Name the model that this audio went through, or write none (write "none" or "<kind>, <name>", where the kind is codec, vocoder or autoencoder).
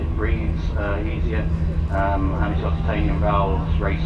none